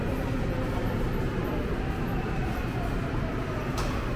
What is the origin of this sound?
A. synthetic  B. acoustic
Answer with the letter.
B